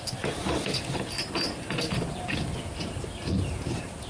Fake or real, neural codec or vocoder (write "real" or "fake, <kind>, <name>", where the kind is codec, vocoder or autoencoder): real